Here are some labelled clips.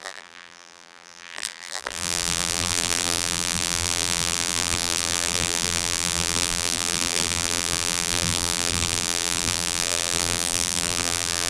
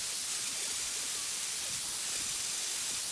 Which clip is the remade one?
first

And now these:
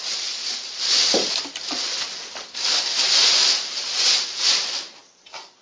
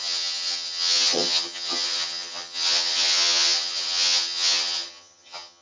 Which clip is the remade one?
second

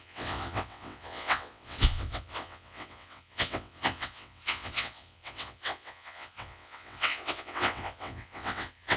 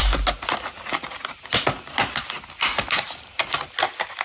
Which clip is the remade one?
first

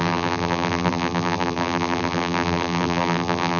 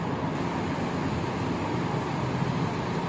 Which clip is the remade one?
first